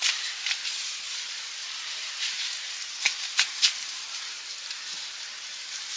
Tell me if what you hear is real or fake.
fake